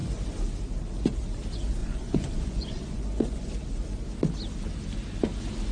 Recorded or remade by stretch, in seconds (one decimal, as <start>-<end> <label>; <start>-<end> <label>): 0.0-1.8 recorded; 1.8-3.5 remade; 3.5-5.7 recorded